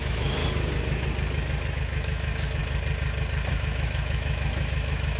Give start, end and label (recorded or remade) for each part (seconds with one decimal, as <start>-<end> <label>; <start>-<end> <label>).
0.0-0.4 remade; 0.4-1.7 recorded; 1.7-2.6 remade; 2.6-3.5 recorded; 3.5-5.2 remade